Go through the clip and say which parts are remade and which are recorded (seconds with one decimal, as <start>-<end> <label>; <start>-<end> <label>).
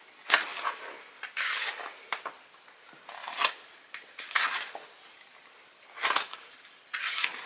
0.0-7.5 recorded